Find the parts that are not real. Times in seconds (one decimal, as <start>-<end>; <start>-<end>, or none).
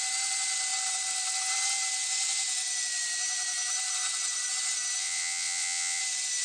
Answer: 5.0-6.0